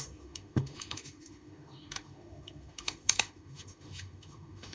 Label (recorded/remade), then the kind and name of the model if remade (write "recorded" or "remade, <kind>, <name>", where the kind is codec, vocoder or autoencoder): remade, autoencoder, DAC-VAE